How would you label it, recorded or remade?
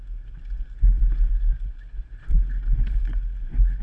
recorded